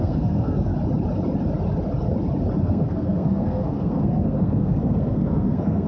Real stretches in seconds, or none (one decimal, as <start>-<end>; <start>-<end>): 0.7-2.6